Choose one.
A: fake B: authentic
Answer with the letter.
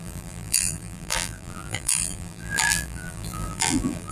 A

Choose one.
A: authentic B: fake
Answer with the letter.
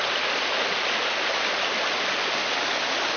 A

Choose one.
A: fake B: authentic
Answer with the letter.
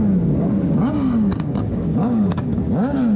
A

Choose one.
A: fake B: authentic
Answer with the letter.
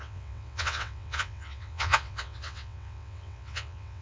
A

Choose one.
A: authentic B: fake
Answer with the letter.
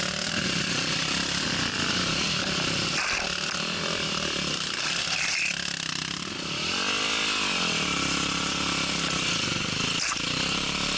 B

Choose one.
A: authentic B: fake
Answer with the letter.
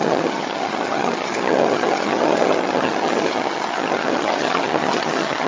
B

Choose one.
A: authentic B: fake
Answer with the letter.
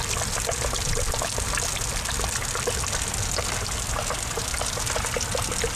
A